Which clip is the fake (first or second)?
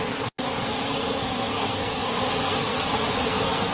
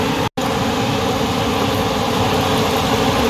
first